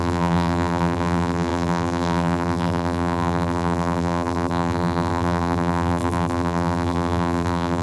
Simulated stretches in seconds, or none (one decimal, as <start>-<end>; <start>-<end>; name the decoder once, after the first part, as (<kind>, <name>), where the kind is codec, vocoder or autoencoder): 0.0-7.8 (vocoder, BigVGAN v2)